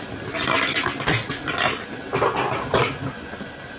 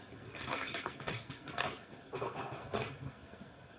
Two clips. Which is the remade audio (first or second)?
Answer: second